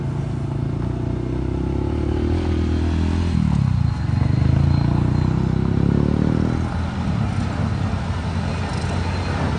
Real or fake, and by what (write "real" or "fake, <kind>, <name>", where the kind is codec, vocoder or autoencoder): real